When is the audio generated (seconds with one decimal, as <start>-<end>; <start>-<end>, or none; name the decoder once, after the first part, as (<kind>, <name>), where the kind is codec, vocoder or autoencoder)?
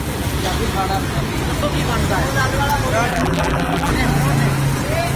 3.1-3.9 (vocoder, BigVGAN v2)